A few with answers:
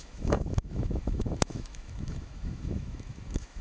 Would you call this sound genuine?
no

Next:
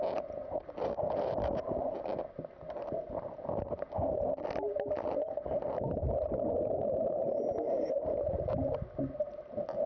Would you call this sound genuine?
yes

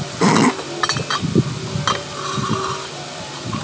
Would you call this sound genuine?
yes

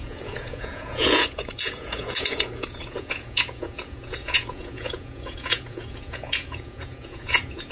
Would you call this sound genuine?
no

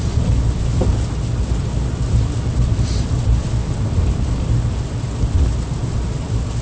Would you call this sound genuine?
yes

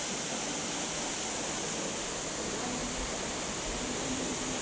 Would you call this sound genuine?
yes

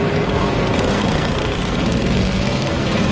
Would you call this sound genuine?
no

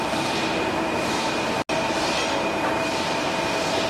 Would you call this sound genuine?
yes